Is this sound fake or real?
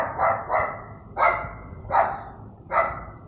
real